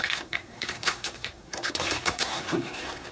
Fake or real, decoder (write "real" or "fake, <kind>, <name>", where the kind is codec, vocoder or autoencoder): fake, codec, SNAC